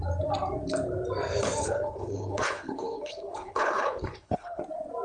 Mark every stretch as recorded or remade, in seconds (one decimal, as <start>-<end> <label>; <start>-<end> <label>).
0.0-1.6 recorded; 1.6-4.6 remade; 4.6-5.0 recorded